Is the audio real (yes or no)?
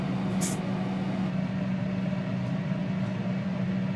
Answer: yes